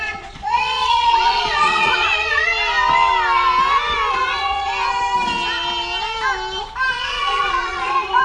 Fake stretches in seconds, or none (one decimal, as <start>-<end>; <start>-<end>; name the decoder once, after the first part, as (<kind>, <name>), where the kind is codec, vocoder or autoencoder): 0.0-2.5 (vocoder, Vocos); 4.1-4.7; 7.0-8.2